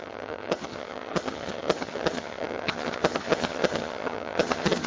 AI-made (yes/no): yes